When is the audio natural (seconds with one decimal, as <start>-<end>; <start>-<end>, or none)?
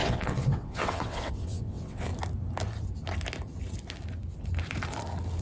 2.1-5.4